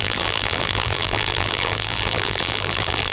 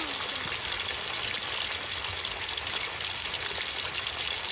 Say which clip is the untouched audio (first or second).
second